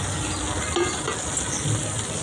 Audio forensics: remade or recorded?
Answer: recorded